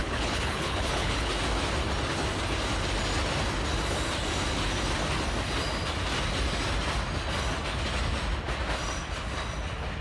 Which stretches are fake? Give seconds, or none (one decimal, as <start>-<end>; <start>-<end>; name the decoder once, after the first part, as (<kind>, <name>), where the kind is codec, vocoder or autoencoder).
0.0-1.3 (codec, HILCodec)

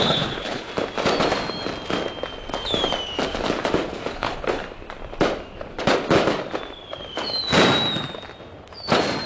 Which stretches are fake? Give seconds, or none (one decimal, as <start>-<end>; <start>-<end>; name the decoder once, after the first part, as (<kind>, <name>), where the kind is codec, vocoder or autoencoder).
0.0-0.7 (codec, HILCodec); 4.1-4.6

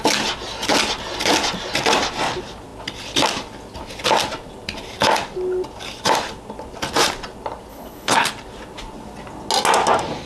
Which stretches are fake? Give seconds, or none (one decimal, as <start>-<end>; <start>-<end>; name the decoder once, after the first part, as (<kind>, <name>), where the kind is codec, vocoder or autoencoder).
7.7-8.3 (codec, HILCodec)

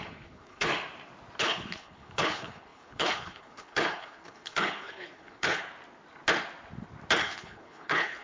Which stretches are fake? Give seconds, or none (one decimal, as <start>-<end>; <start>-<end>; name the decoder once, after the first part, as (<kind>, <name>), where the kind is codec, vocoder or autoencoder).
0.0-0.7 (codec, HILCodec); 1.4-5.6; 7.2-8.2

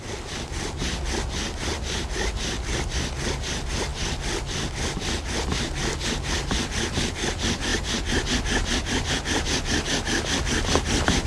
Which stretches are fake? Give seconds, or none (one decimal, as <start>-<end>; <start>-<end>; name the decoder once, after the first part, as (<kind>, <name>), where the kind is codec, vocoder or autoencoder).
none